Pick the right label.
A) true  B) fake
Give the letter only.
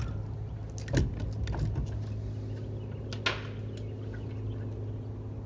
A